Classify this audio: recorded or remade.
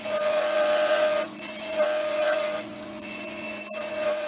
remade